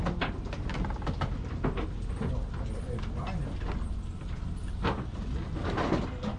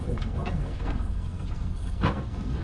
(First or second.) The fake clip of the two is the second